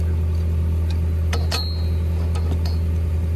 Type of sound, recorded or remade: recorded